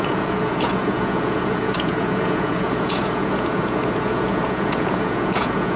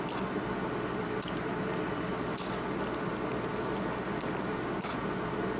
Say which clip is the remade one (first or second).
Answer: first